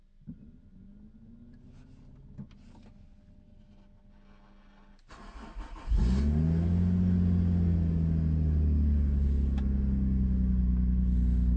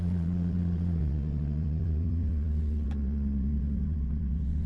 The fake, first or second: second